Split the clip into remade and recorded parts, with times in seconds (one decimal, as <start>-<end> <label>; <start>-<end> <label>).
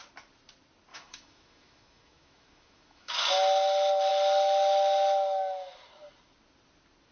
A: 0.0-0.9 recorded; 0.9-3.3 remade; 3.3-7.1 recorded